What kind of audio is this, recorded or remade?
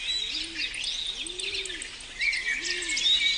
recorded